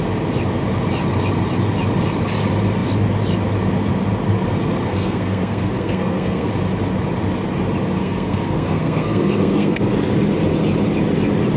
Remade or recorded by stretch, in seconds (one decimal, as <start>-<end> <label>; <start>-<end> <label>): 0.0-4.9 recorded; 4.9-6.5 remade; 6.5-8.0 recorded; 8.0-9.8 remade; 9.8-11.6 recorded